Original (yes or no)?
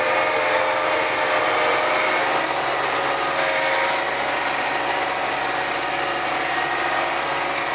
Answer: yes